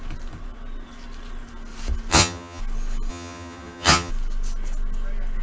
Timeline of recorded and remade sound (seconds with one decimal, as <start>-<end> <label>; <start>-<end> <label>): 0.0-2.1 recorded; 2.1-2.6 remade; 2.6-3.1 recorded; 3.1-4.1 remade; 4.1-5.4 recorded